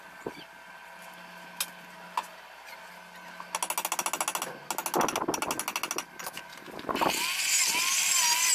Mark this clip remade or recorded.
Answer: recorded